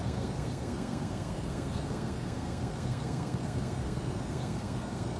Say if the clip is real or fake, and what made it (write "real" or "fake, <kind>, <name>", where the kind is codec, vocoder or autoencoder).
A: fake, codec, SNAC